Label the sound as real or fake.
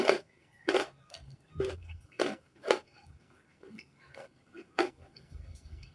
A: fake